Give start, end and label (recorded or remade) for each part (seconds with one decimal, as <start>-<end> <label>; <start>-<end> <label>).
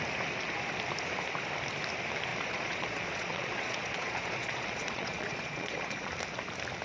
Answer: 0.0-2.3 recorded; 2.3-6.1 remade; 6.1-6.8 recorded